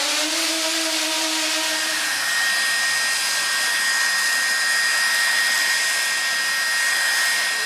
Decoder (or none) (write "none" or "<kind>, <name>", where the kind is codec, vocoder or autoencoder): none